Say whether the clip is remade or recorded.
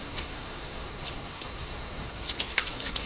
remade